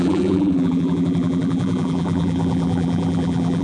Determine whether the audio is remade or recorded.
remade